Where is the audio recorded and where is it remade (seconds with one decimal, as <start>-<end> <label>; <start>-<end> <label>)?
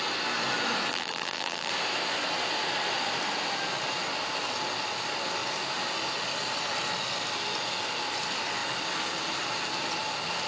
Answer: 0.0-0.9 recorded; 0.9-1.7 remade; 1.7-10.5 recorded